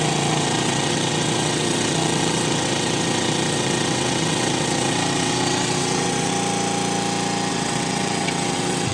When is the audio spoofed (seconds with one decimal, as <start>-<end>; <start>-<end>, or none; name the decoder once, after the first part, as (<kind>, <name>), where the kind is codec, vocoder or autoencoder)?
0.0-6.3 (vocoder, WaveNeXt); 7.5-8.9